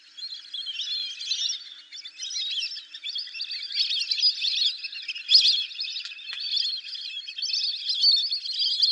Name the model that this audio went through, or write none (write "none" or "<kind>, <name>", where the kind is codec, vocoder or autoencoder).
none